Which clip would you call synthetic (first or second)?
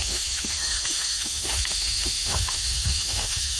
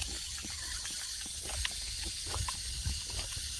first